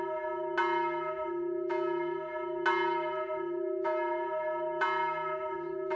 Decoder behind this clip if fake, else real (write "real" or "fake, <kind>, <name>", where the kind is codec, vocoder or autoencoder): real